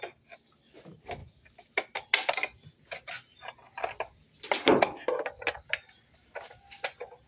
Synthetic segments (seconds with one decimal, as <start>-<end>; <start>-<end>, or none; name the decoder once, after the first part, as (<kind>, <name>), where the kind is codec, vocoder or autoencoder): none